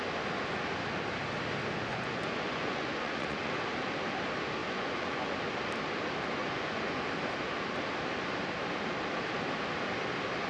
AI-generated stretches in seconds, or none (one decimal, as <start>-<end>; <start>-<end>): 1.9-3.5; 4.6-5.3; 6.4-7.0